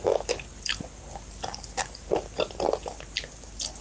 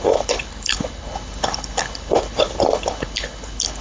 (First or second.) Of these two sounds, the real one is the first